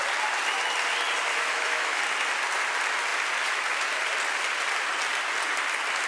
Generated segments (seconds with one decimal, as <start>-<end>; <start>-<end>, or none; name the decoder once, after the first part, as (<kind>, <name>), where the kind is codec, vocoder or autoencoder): 1.3-2.0 (autoencoder, DAC-VAE)